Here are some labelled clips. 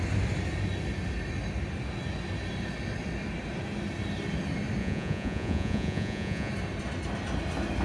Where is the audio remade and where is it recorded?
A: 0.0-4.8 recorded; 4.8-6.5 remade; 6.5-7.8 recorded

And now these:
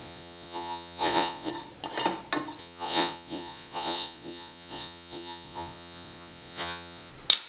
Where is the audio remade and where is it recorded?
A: 0.0-1.5 remade; 1.5-2.6 recorded; 2.6-7.1 remade; 7.1-7.5 recorded

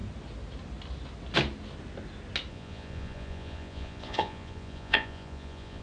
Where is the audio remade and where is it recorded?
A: 0.0-2.5 recorded; 2.5-5.8 remade